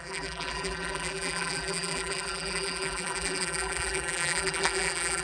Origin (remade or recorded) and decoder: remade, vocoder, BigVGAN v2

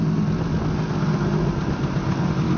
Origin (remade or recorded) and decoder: recorded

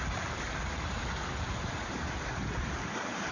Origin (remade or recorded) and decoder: remade, vocoder, BigVGAN v2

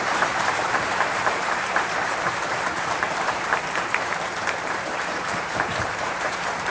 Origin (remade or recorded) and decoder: remade, vocoder, BigVGAN v2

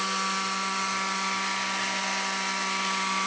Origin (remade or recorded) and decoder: recorded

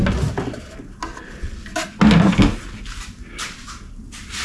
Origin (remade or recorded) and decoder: recorded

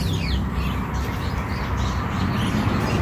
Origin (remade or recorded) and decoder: recorded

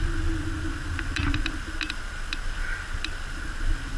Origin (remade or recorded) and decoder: recorded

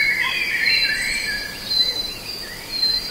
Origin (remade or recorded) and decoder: remade, vocoder, BigVGAN v2